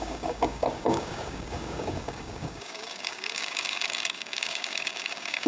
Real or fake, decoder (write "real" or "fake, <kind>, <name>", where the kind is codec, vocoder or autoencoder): fake, codec, DAC